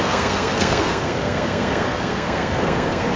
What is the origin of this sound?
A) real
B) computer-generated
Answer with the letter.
B